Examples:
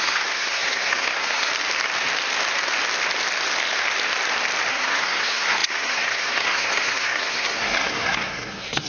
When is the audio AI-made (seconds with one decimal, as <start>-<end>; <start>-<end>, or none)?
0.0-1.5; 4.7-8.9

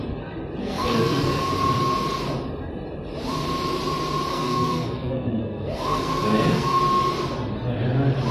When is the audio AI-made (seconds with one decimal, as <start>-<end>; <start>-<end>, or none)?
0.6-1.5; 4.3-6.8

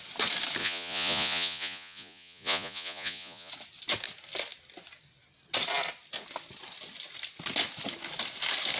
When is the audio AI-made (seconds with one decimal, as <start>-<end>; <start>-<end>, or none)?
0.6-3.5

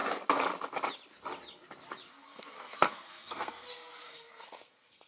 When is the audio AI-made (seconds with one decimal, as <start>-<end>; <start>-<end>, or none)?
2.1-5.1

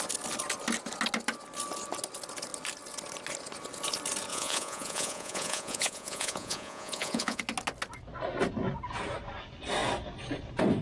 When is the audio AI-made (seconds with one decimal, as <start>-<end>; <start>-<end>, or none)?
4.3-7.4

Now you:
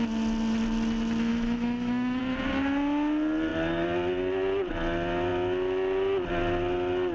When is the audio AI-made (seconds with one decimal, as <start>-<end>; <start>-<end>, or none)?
1.3-2.2